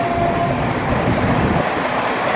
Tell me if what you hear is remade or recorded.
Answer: recorded